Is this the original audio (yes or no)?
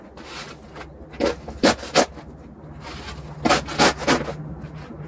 yes